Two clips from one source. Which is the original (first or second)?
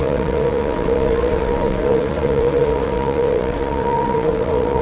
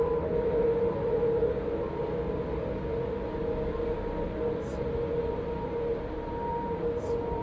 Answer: second